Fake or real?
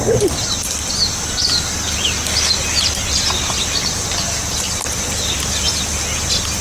real